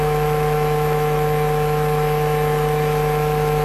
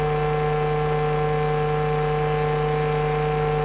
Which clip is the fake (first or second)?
first